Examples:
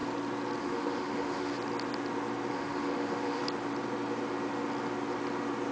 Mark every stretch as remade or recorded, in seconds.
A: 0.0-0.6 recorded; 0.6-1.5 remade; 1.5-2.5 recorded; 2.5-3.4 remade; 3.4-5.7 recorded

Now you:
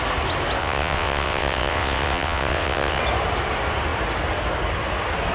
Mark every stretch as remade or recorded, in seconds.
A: 0.0-0.6 recorded; 0.6-3.0 remade; 3.0-5.3 recorded

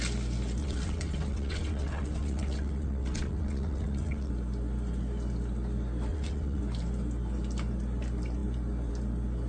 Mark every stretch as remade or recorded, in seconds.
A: 0.0-0.6 recorded; 0.6-4.3 remade; 4.3-6.1 recorded; 6.1-6.6 remade; 6.6-9.5 recorded

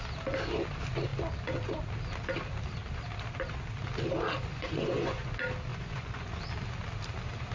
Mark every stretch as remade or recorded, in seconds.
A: 0.0-4.5 recorded; 4.5-5.3 remade; 5.3-5.7 recorded; 5.7-6.4 remade; 6.4-7.5 recorded

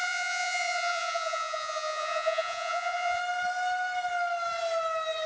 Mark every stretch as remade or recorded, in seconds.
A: 0.0-3.2 remade; 3.2-5.3 recorded

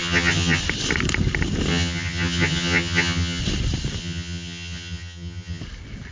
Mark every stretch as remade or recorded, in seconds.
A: 0.0-0.6 remade; 0.6-1.7 recorded; 1.7-3.4 remade; 3.4-4.0 recorded; 4.0-5.6 remade; 5.6-6.1 recorded

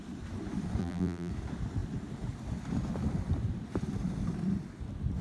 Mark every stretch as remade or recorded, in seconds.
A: 0.0-0.8 recorded; 0.8-1.3 remade; 1.3-5.2 recorded